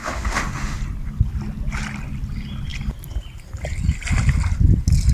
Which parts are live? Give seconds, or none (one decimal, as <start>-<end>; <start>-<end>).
0.8-5.1